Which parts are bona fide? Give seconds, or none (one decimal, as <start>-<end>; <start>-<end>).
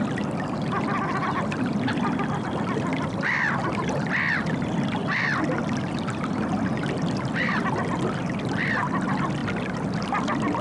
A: 0.0-10.6